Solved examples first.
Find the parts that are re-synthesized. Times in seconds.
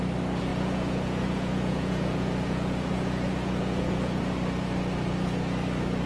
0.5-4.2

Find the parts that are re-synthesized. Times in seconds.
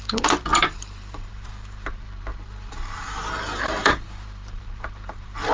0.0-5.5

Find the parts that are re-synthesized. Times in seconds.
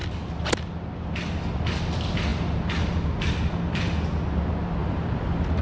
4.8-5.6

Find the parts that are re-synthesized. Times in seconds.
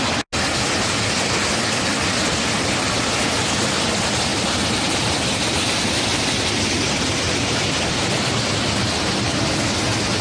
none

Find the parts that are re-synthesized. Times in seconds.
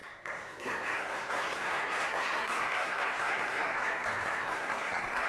0.0-5.3